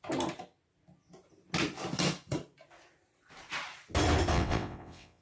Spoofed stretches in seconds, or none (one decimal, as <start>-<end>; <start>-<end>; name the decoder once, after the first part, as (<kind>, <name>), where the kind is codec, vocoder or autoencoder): 4.3-5.2 (vocoder, WaveNeXt)